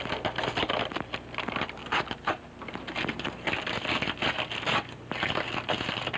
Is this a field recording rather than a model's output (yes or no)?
yes